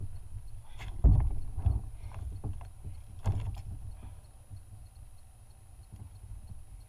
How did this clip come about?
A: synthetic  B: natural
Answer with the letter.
B